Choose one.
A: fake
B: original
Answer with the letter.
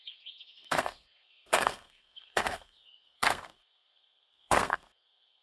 A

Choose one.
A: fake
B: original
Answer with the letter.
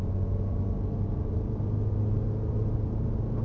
B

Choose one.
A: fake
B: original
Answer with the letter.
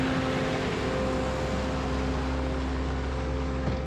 B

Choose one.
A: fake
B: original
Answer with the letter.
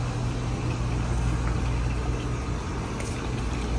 B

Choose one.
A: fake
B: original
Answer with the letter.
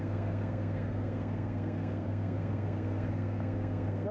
A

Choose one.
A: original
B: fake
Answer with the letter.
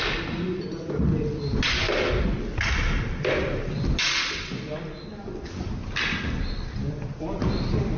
A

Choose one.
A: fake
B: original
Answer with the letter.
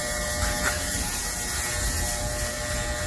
B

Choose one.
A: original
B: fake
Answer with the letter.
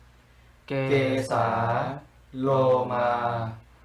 A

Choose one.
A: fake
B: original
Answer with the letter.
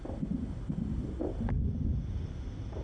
B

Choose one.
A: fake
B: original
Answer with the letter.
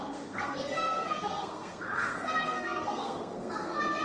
A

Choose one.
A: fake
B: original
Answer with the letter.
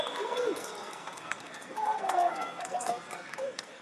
A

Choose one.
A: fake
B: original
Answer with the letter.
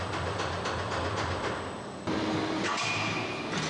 B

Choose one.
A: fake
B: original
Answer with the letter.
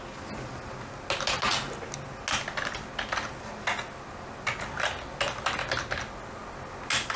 B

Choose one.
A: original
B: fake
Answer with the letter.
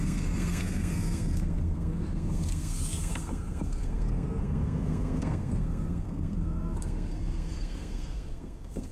B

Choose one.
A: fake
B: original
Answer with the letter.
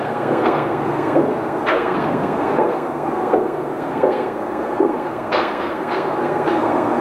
A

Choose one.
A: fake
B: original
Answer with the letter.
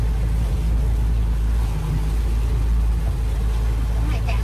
B